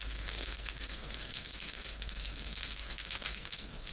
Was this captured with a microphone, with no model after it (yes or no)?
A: no